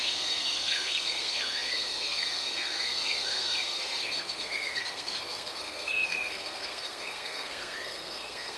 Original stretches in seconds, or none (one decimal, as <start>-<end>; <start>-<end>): none